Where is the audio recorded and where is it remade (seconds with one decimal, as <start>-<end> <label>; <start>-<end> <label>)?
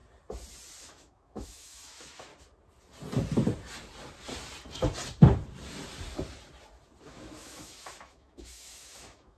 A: 0.0-0.8 recorded; 0.8-2.3 remade; 2.3-7.0 recorded; 7.0-9.4 remade